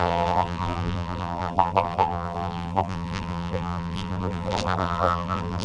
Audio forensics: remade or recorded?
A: remade